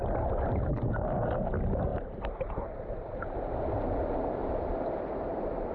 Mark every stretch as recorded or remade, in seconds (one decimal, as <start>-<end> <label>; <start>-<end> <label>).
0.0-1.9 recorded; 1.9-3.6 remade; 3.6-5.7 recorded

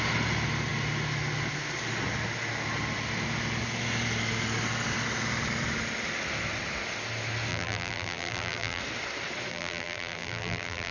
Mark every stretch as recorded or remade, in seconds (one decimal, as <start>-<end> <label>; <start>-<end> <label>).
0.0-7.5 recorded; 7.5-8.8 remade; 8.8-9.5 recorded; 9.5-10.9 remade

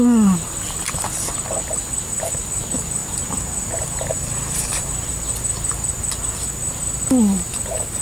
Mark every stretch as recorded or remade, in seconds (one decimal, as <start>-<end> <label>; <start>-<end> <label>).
0.0-3.0 recorded; 3.0-5.3 remade; 5.3-8.0 recorded

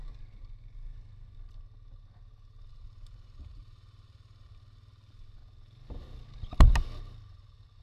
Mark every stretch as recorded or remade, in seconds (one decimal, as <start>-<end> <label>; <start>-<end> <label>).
0.0-2.7 recorded; 2.7-5.4 remade; 5.4-7.8 recorded

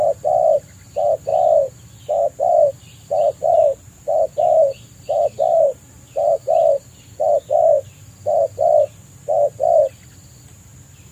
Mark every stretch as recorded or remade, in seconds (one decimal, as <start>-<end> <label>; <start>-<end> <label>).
0.0-3.4 recorded; 3.4-7.2 remade; 7.2-11.1 recorded